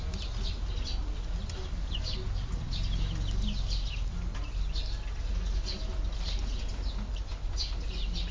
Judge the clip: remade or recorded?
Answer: recorded